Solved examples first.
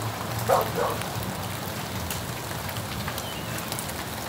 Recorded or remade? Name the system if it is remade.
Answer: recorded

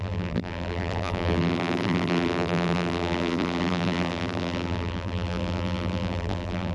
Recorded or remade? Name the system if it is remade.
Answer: remade, vocoder, BigVGAN v2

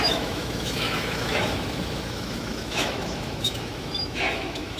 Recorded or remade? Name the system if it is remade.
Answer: remade, autoencoder, DAC-VAE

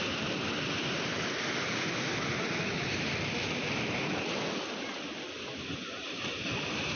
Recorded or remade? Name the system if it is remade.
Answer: recorded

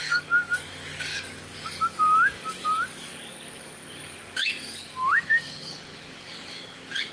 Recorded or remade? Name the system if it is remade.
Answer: remade, codec, DAC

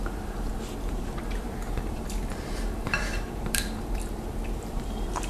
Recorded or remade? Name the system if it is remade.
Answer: remade, vocoder, BigVGAN v2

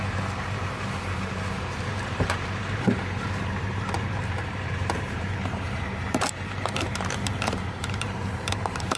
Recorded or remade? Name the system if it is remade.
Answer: remade, vocoder, BigVGAN v2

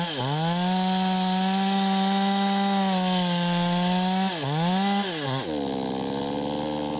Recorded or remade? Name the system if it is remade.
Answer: recorded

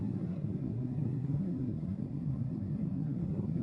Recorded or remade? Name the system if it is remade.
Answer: remade, codec, SNAC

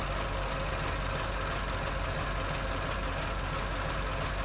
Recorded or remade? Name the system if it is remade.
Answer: recorded